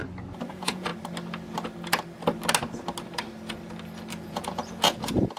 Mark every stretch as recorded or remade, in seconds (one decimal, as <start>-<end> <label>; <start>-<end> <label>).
0.0-0.5 recorded; 0.5-0.9 remade; 0.9-4.1 recorded; 4.1-5.4 remade